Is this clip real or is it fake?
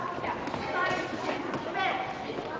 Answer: real